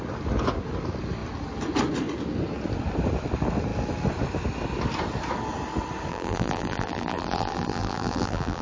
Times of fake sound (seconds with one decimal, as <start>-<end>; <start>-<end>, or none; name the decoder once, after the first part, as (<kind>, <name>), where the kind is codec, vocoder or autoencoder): 6.1-8.6 (vocoder, BigVGAN v2)